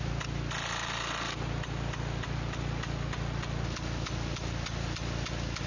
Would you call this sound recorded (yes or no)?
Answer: yes